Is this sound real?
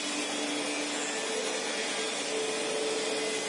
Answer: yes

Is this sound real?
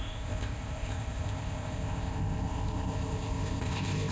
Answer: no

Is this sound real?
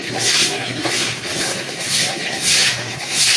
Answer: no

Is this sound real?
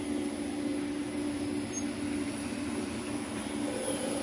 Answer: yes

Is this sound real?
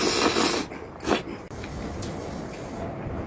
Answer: yes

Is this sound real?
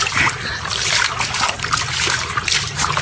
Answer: yes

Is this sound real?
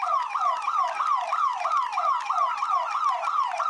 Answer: yes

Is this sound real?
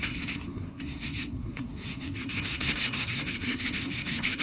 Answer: no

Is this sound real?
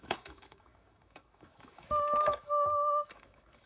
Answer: no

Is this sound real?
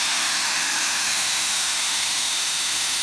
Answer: no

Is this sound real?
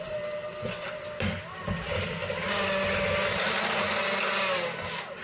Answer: yes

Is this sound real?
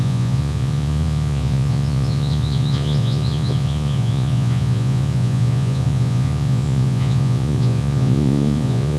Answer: no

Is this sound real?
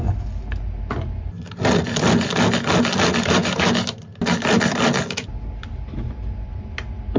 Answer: yes